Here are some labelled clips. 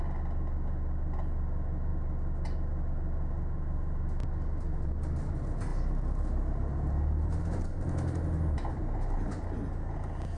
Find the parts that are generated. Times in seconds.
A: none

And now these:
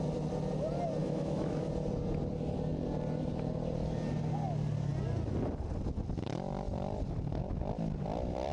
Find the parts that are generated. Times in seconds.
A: 1.0-1.7 (autoencoder, DAC-VAE)

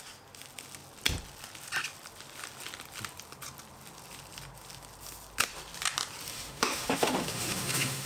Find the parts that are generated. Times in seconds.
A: 6.3-8.1 (autoencoder, DAC-VAE)

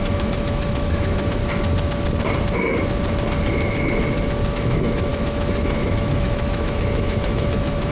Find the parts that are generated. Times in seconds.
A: 0.0-1.4 (autoencoder, DAC-VAE); 4.5-7.9

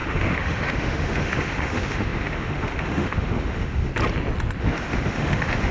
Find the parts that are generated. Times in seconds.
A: 0.0-3.9 (autoencoder, DAC-VAE); 4.6-5.7

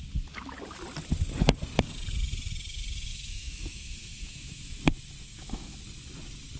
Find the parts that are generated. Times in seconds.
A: 3.1-4.8 (autoencoder, DAC-VAE); 5.3-5.8

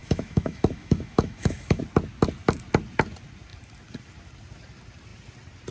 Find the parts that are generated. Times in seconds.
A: 0.0-1.8 (autoencoder, DAC-VAE)

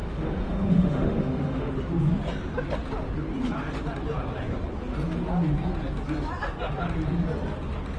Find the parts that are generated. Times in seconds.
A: 0.0-1.7 (autoencoder, DAC-VAE)